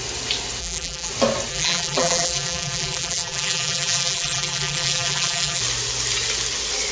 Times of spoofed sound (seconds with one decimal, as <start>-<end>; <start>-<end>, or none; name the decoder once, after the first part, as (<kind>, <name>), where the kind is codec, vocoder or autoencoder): 0.6-1.1 (vocoder, BigVGAN v2); 1.5-5.6